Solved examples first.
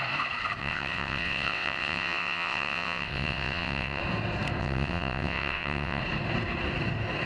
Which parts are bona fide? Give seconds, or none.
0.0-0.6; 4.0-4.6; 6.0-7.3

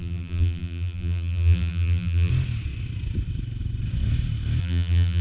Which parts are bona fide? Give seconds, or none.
2.3-4.6

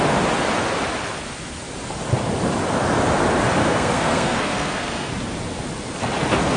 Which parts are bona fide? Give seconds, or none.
0.0-3.6; 5.1-6.6